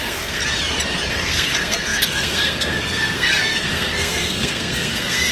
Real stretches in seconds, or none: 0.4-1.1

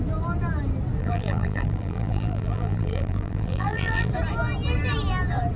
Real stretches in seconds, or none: 0.0-1.0; 4.1-5.6

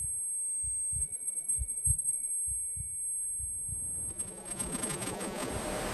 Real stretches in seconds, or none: 0.0-1.0; 2.3-4.1; 5.5-5.9

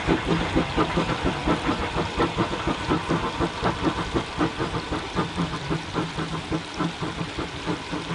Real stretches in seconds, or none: 0.0-8.1

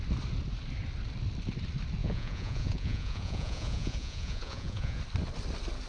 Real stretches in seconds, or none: 0.0-2.0; 5.0-5.9

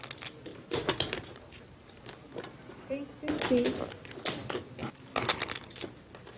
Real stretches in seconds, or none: 0.0-0.5; 3.2-6.4

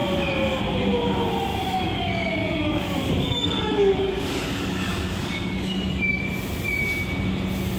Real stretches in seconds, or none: 0.0-1.5; 6.2-7.8